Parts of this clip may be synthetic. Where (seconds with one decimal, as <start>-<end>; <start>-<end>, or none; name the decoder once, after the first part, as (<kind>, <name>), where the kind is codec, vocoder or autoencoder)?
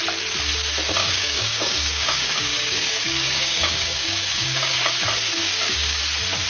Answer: 1.0-4.9 (codec, DAC); 5.4-6.0